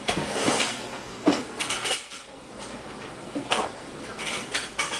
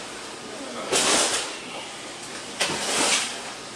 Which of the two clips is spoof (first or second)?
first